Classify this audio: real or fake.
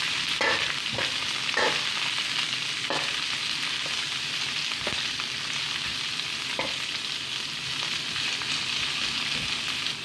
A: real